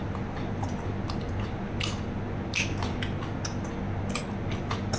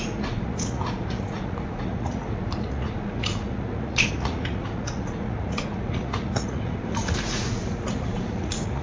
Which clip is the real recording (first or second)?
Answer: first